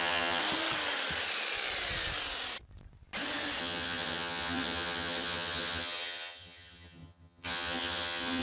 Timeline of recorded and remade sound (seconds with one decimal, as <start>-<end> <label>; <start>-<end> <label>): 0.0-0.4 remade; 0.4-3.6 recorded; 3.6-8.4 remade